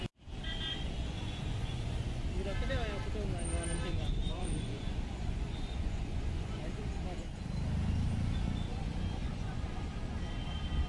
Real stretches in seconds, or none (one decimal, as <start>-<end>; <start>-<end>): 0.0-0.7; 2.2-3.9; 6.6-9.2; 9.8-10.9